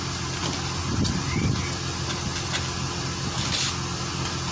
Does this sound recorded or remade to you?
recorded